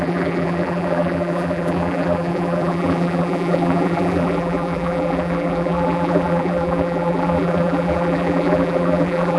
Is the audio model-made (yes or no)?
yes